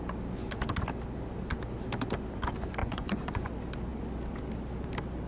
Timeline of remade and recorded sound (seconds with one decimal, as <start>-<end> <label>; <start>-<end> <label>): 0.0-2.8 recorded; 2.8-3.5 remade; 3.5-5.3 recorded